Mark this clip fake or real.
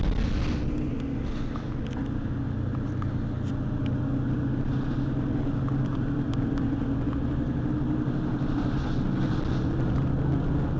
real